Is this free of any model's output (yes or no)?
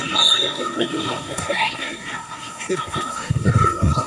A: no